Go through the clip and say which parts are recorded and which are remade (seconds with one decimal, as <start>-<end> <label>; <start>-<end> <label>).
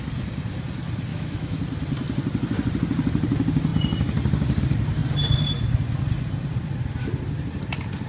0.0-1.1 recorded; 1.1-1.6 remade; 1.6-8.1 recorded